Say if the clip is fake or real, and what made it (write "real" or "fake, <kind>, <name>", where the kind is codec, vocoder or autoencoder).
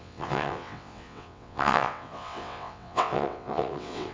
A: fake, vocoder, WaveNeXt